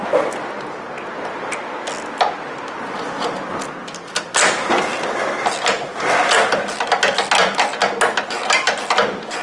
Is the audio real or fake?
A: real